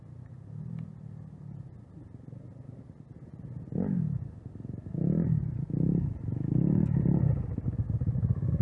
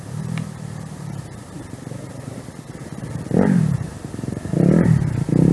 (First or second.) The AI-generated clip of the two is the second